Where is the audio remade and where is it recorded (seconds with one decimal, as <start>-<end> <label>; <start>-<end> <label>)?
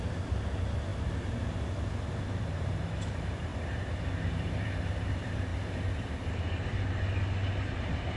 0.0-0.9 remade; 0.9-2.5 recorded; 2.5-3.5 remade; 3.5-4.3 recorded; 4.3-5.5 remade; 5.5-7.7 recorded; 7.7-8.2 remade